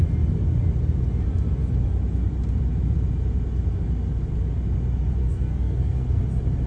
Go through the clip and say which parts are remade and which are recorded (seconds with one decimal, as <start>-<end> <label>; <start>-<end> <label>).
0.0-5.2 recorded; 5.2-6.2 remade; 6.2-6.7 recorded